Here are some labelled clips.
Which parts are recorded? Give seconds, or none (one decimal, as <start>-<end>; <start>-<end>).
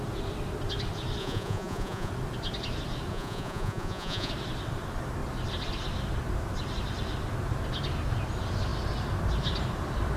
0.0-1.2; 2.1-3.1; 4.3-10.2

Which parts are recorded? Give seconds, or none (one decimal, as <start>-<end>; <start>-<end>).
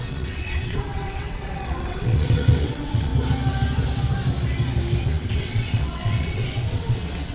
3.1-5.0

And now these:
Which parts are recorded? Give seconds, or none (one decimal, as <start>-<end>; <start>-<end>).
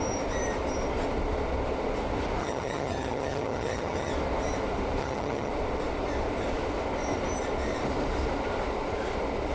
0.0-2.4; 4.1-5.0; 5.5-9.5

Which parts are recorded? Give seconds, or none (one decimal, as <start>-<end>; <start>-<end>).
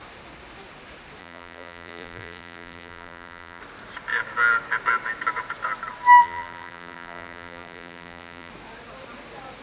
0.0-1.2; 3.6-6.2; 8.5-9.6